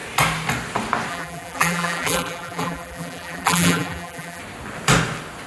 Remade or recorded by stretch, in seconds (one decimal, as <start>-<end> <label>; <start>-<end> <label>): 0.0-1.1 recorded; 1.1-4.4 remade; 4.4-5.5 recorded